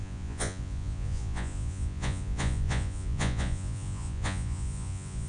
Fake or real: fake